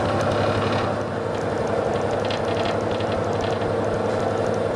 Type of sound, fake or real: real